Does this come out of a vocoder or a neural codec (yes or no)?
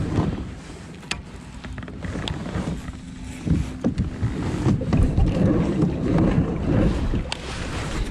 no